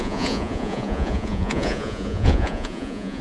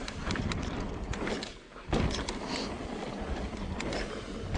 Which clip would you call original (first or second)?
second